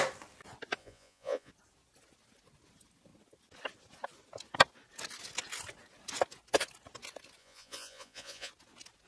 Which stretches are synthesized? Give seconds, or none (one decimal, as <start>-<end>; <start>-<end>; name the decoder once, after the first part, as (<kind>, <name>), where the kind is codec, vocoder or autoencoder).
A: 0.8-1.5 (vocoder, Vocos); 7.4-8.5